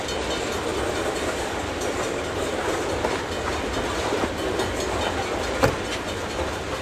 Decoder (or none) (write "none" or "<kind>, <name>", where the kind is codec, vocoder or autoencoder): none